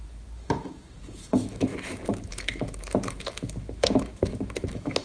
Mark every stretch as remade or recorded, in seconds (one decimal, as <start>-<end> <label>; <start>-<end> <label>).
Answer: 0.0-5.0 remade

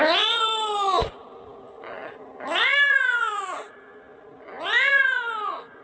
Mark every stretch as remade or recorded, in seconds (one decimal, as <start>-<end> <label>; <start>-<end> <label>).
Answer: 0.0-5.8 recorded

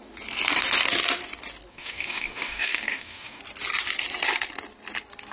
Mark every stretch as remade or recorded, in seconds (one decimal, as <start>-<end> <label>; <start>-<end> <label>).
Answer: 0.0-1.7 recorded; 1.7-3.4 remade; 3.4-5.3 recorded

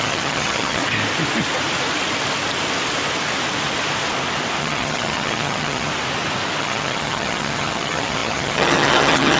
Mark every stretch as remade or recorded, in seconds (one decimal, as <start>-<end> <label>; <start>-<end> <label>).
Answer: 0.0-0.8 remade; 0.8-4.6 recorded; 4.6-5.9 remade; 5.9-6.6 recorded; 6.6-9.4 remade

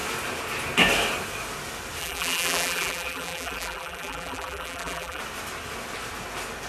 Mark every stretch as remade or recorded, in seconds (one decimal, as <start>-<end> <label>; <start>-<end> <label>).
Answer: 0.0-2.0 recorded; 2.0-5.2 remade; 5.2-6.7 recorded